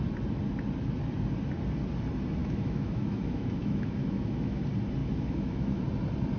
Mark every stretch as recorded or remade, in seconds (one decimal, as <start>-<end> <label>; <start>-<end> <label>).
0.0-2.4 recorded; 2.4-4.6 remade; 4.6-5.0 recorded; 5.0-5.8 remade; 5.8-6.4 recorded